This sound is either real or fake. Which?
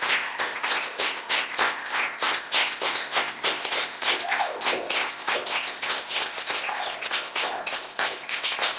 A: fake